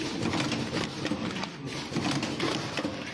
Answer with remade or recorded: recorded